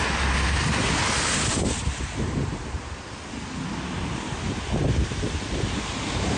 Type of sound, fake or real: real